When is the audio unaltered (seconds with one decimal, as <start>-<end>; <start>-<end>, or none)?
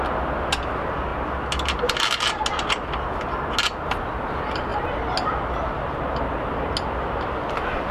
0.0-7.9